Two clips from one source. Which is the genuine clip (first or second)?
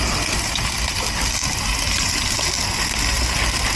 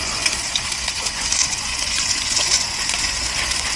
first